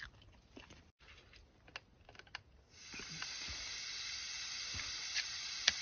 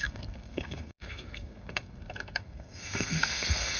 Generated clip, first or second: second